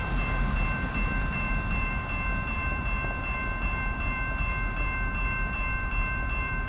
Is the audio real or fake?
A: fake